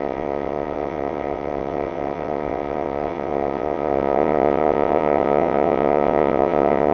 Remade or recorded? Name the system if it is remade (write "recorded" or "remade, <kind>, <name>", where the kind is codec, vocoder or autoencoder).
remade, vocoder, WaveNeXt